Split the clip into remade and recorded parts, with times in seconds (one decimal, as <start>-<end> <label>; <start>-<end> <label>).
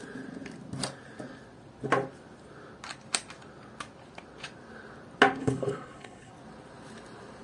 0.0-5.4 recorded; 5.4-6.3 remade; 6.3-7.4 recorded